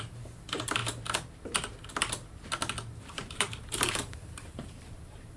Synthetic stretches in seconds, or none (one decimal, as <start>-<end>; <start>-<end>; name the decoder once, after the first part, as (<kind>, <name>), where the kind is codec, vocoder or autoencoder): 0.0-0.8 (vocoder, BigVGAN v2); 3.0-5.4